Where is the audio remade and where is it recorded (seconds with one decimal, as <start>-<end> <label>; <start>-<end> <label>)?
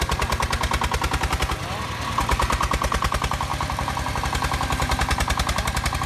0.0-3.5 recorded; 3.5-4.2 remade; 4.2-6.1 recorded